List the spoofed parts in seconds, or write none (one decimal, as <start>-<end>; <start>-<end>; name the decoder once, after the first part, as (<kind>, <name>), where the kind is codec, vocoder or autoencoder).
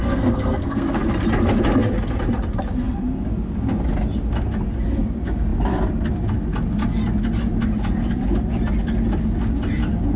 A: 0.0-1.0 (codec, SNAC)